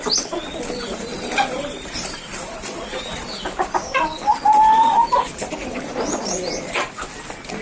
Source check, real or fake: real